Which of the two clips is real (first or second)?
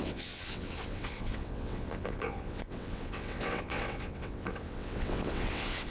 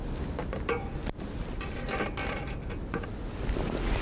second